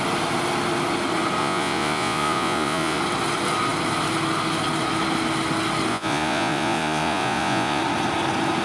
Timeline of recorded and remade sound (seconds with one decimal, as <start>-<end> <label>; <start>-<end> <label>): 0.0-1.4 recorded; 1.4-3.0 remade; 3.0-5.9 recorded; 5.9-7.8 remade; 7.8-8.6 recorded